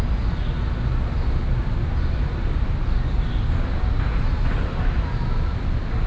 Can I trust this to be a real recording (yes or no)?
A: yes